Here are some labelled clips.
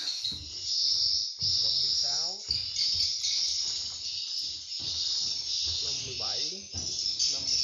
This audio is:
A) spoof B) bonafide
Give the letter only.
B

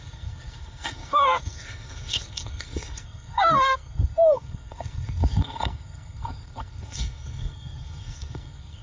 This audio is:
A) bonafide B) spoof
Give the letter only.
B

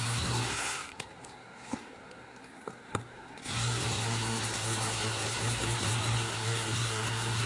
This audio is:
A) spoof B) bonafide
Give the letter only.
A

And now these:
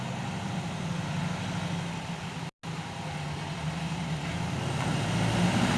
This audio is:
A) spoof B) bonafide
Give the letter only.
B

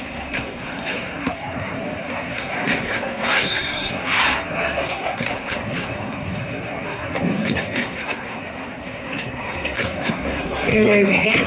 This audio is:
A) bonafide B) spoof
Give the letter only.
B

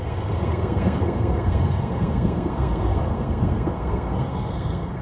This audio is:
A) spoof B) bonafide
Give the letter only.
A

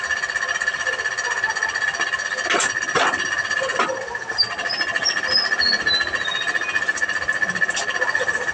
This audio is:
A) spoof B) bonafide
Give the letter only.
B